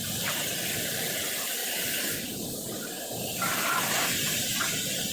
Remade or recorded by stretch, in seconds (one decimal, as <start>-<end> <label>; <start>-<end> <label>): 0.0-5.1 recorded